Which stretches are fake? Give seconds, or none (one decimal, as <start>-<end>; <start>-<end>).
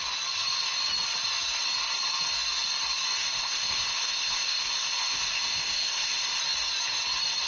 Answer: 3.2-6.4